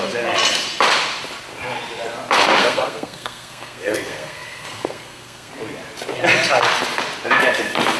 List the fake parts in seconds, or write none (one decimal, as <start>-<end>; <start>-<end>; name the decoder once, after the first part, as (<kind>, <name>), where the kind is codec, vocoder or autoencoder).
2.6-5.5 (codec, SNAC)